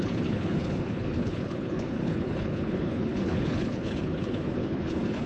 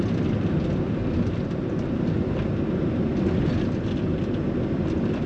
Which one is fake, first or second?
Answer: first